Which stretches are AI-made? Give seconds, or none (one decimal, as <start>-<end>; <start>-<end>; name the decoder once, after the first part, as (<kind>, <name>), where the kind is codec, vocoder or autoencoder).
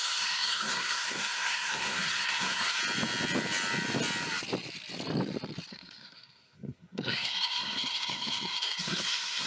0.0-2.8 (codec, SNAC); 5.7-9.5